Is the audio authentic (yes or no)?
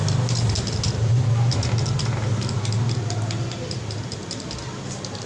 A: yes